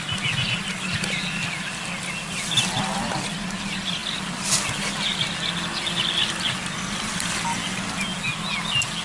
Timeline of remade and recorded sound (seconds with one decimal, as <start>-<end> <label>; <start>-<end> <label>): 0.0-9.0 recorded